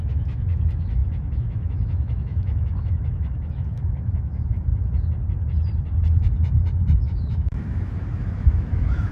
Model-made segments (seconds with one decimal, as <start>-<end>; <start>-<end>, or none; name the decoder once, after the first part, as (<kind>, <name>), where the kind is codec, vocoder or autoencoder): 0.0-4.7 (autoencoder, DAC-VAE); 7.0-9.1